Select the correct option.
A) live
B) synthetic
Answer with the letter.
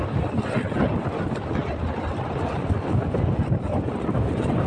A